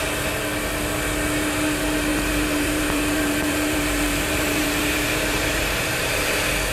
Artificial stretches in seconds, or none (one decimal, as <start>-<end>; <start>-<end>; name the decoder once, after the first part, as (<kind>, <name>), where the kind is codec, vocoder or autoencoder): 2.1-6.1 (vocoder, BigVGAN v2)